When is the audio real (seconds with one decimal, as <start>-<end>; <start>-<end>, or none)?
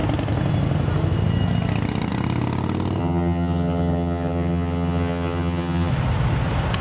0.0-3.0; 5.9-6.8